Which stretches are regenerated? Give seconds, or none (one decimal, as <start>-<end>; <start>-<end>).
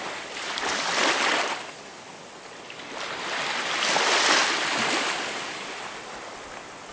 none